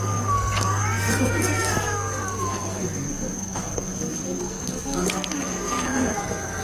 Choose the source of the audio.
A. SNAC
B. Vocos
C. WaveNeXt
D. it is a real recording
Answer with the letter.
A